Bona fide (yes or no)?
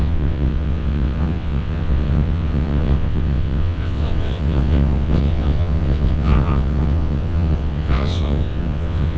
no